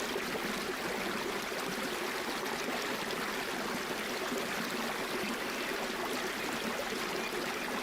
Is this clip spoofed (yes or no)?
no